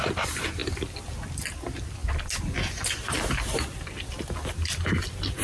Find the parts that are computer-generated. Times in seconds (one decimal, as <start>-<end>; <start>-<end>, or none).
none